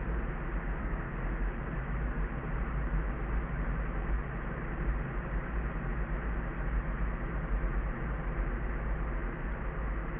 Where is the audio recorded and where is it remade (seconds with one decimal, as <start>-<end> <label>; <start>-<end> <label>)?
0.0-0.8 recorded; 0.8-1.3 remade; 1.3-10.2 recorded